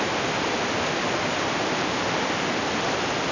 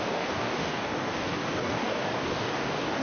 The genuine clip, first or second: first